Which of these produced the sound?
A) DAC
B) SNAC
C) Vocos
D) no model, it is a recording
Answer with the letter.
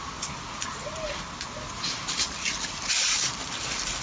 D